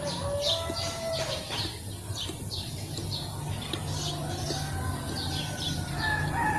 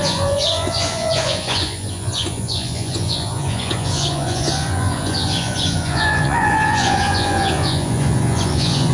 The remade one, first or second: second